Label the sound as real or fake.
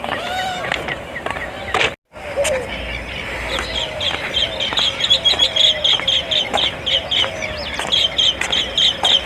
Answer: real